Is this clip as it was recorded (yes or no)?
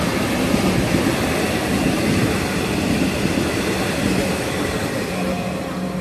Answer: yes